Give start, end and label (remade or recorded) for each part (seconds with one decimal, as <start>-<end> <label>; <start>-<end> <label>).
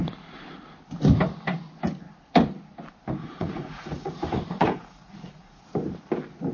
0.0-3.2 recorded; 3.2-5.6 remade; 5.6-6.5 recorded